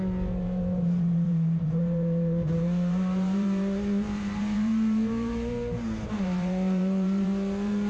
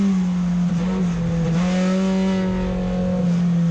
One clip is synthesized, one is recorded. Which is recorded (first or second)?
second